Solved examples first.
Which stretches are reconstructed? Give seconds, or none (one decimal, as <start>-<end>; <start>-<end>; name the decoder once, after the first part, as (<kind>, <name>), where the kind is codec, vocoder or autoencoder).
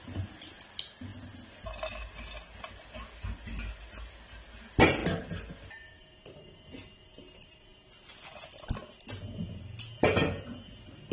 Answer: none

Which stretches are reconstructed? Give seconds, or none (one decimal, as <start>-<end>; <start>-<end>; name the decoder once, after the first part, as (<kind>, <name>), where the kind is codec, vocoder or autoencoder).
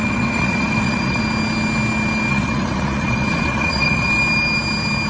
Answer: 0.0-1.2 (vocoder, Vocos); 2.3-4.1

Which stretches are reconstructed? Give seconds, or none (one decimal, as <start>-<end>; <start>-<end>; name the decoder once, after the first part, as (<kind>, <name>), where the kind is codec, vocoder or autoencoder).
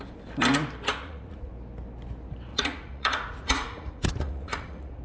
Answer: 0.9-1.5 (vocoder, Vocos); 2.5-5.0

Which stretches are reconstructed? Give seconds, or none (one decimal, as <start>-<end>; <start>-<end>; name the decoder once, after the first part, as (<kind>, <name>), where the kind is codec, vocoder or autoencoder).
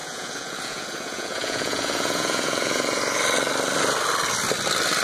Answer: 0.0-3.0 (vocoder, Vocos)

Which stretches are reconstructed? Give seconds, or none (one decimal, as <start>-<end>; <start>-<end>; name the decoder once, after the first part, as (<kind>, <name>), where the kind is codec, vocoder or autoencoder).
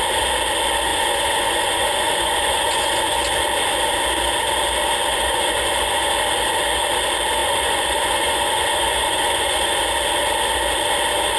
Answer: 0.9-3.2 (vocoder, Vocos); 5.1-6.1; 7.4-9.8